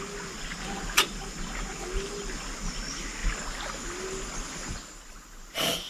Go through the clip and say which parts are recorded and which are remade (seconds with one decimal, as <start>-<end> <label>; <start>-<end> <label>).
0.0-5.9 recorded